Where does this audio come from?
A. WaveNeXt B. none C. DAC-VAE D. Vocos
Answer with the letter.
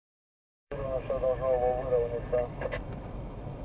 C